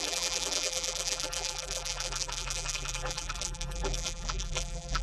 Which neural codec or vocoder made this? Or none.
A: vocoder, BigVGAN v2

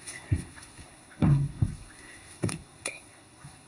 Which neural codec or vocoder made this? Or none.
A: codec, SNAC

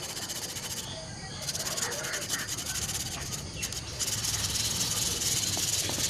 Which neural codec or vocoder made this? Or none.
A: none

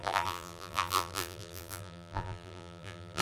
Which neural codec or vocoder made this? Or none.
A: vocoder, BigVGAN v2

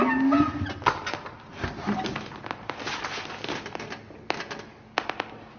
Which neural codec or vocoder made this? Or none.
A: none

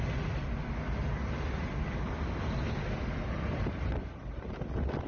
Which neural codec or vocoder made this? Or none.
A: none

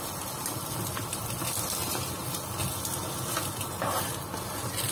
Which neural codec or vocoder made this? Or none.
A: none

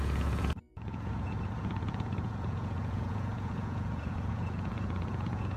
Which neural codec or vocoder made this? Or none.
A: vocoder, Vocos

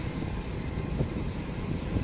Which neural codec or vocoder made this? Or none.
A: vocoder, BigVGAN v2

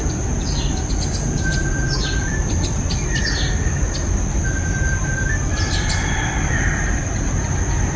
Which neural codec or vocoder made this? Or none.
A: none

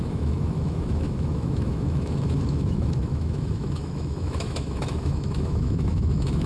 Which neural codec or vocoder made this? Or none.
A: autoencoder, DAC-VAE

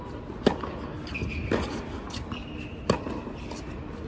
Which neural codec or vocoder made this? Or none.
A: none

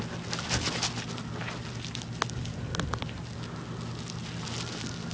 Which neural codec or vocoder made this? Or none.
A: none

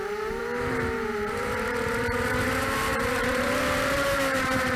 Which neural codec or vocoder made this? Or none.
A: vocoder, BigVGAN v2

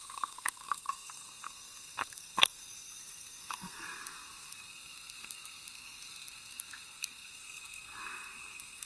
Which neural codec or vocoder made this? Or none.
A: codec, SNAC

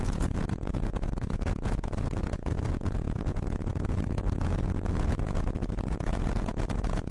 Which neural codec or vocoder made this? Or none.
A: vocoder, Vocos